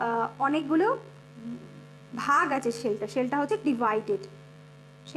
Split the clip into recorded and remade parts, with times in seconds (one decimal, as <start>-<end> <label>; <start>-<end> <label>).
0.0-2.8 remade; 2.8-3.5 recorded; 3.5-5.2 remade